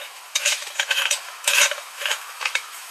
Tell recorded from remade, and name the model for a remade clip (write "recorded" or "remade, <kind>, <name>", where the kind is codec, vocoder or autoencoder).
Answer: remade, autoencoder, DAC-VAE